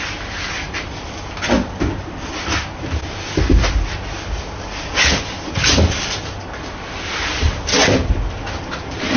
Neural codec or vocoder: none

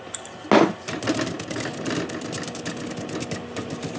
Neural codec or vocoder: none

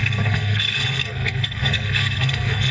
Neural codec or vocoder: codec, SNAC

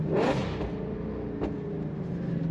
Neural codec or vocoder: none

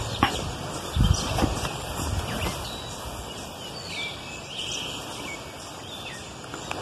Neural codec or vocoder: none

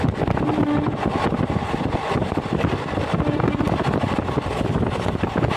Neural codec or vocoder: none